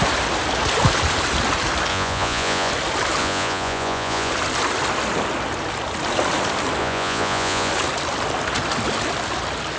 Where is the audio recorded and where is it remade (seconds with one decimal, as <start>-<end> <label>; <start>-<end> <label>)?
0.0-1.9 recorded; 1.9-2.7 remade; 2.7-3.2 recorded; 3.2-4.3 remade; 4.3-6.8 recorded; 6.8-7.7 remade; 7.7-9.8 recorded